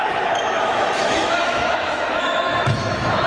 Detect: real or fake fake